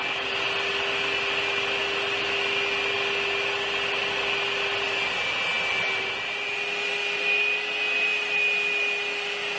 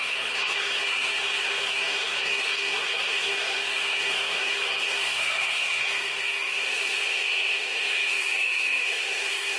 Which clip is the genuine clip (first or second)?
first